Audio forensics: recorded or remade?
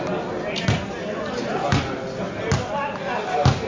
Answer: recorded